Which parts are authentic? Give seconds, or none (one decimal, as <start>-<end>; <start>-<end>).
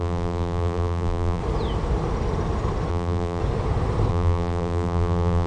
1.4-2.9; 3.4-4.1